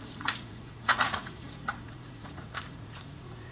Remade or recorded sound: remade